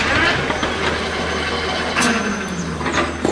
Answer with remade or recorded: recorded